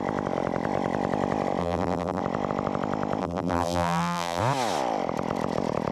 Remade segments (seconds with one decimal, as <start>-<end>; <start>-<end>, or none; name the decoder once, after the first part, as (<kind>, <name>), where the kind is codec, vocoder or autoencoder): 1.6-2.2 (vocoder, BigVGAN v2); 3.2-4.4